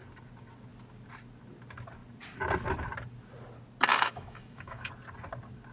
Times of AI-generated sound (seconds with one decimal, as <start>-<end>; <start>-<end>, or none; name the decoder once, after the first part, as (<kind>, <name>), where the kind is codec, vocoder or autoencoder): 3.9-4.9 (autoencoder, DAC-VAE)